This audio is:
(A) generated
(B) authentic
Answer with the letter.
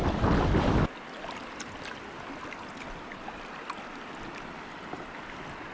B